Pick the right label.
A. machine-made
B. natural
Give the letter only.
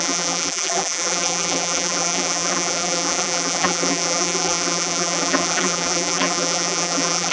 A